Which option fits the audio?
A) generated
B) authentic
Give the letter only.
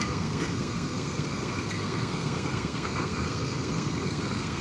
A